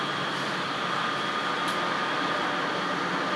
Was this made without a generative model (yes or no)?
yes